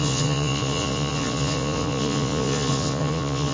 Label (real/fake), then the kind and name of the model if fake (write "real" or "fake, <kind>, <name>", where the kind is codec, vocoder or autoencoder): fake, vocoder, Vocos